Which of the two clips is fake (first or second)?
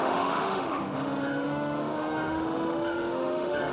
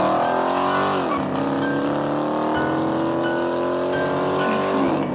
first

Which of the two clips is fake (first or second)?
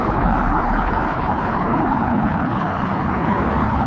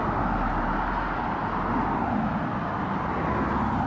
first